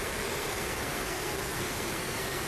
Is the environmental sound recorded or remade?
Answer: remade